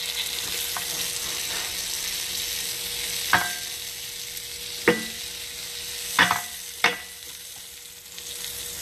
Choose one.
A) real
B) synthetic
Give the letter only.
A